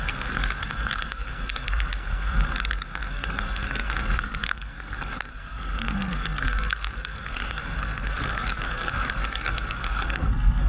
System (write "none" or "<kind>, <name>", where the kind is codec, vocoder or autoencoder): codec, SNAC